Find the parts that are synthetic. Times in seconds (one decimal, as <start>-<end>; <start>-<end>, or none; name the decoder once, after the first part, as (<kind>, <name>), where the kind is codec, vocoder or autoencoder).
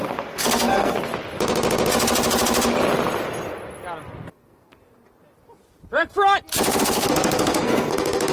0.0-1.1 (codec, SNAC); 4.3-4.8; 6.8-8.3